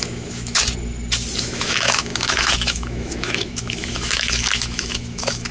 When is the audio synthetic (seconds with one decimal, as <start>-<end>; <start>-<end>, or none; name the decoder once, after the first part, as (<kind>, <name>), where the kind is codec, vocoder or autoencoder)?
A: 0.0-0.6 (autoencoder, DAC-VAE); 1.4-5.5